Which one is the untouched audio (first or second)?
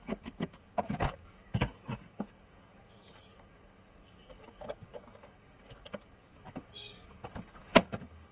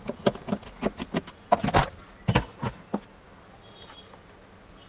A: second